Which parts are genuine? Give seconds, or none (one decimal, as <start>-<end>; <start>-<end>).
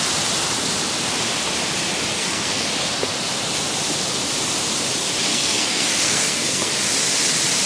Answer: 0.0-2.1; 2.7-5.3; 6.7-7.7